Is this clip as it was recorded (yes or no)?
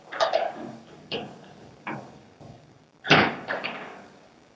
no